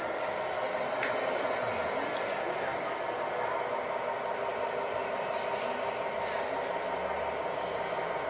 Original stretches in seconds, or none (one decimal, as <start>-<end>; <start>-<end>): 0.0-8.3